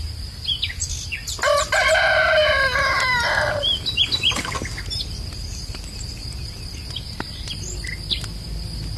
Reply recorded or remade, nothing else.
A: recorded